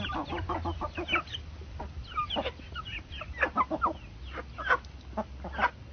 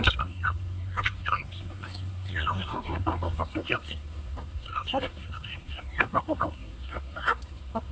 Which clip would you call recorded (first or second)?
first